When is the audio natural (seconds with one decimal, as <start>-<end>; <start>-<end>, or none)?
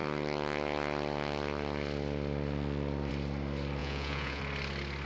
0.0-3.8; 4.4-5.1